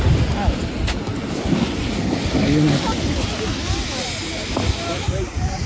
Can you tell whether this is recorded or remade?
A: recorded